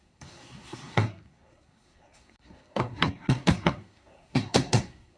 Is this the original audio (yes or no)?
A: no